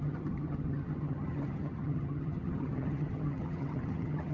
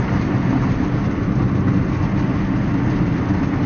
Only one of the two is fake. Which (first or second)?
first